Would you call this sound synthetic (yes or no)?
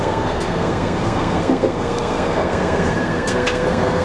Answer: yes